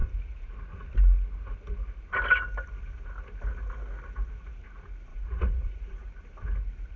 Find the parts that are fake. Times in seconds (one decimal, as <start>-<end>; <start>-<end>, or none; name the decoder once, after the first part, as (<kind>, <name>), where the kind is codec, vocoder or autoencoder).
5.1-6.1 (vocoder, Vocos)